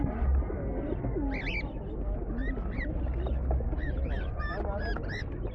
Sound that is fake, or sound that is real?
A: real